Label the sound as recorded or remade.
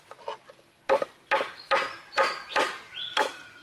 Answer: recorded